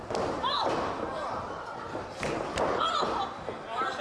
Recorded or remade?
remade